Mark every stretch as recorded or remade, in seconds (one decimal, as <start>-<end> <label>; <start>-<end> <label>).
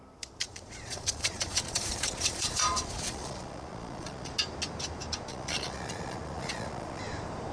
0.0-0.5 recorded; 0.5-4.3 remade; 4.3-5.3 recorded; 5.3-7.0 remade; 7.0-7.5 recorded